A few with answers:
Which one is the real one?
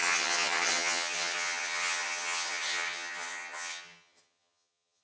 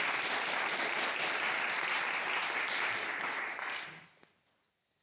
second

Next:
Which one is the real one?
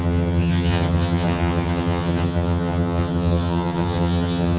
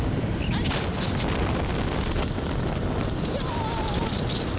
second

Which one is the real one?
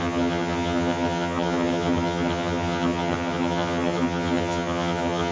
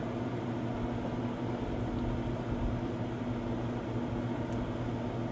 second